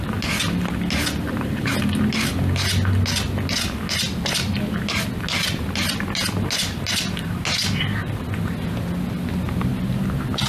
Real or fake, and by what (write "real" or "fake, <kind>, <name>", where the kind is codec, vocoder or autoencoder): real